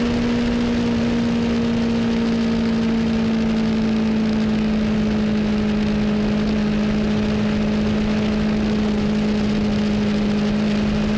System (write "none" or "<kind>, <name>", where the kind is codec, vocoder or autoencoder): none